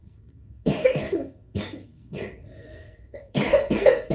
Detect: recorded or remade remade